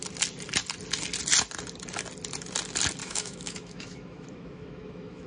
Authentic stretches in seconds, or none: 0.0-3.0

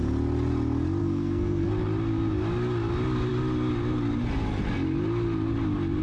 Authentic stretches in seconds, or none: 0.0-1.0; 1.7-6.0

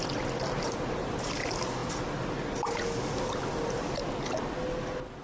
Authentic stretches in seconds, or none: 0.0-5.2

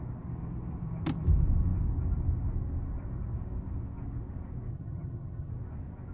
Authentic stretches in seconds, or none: 0.0-4.7; 5.5-6.1